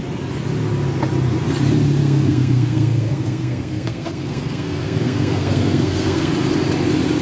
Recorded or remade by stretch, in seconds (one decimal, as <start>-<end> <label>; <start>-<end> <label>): 0.0-2.0 recorded; 2.0-6.3 remade; 6.3-7.2 recorded